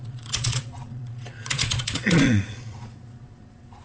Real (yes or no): no